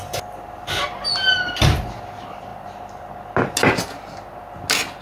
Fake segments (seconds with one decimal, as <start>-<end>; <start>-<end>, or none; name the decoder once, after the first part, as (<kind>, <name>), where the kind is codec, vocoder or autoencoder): none